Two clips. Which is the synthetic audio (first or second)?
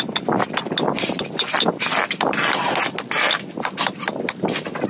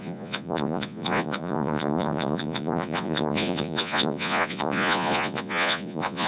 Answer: second